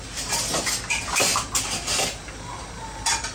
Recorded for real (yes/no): yes